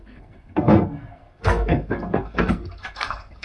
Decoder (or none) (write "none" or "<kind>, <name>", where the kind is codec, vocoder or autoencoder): codec, SNAC